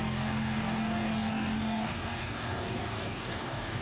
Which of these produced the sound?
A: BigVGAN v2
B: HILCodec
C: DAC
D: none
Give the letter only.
C